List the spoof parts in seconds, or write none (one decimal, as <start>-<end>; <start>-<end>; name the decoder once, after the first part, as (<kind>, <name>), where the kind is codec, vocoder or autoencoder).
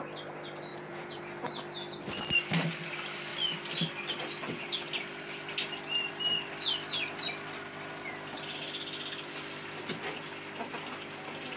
0.7-1.2 (vocoder, Vocos)